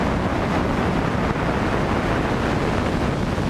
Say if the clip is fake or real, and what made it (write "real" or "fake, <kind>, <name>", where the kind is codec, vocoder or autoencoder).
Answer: real